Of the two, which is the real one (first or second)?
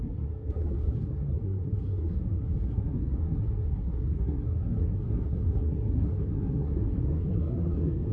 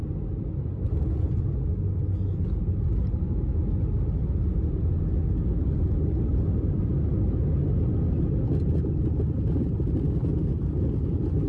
second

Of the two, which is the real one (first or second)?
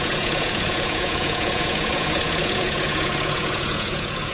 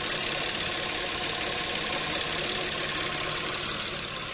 second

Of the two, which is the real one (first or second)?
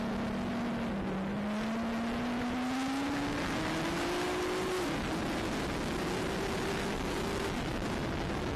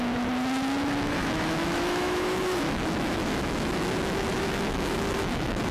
first